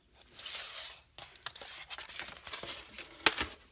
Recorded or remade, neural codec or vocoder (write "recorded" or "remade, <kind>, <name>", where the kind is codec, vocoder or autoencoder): recorded